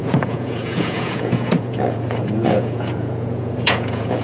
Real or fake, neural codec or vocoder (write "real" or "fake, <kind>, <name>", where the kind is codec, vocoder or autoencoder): fake, vocoder, Vocos